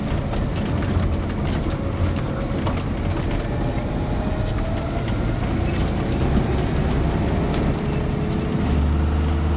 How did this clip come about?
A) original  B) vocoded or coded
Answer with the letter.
A